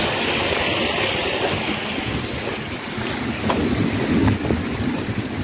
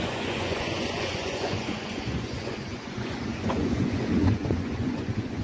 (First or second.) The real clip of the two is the first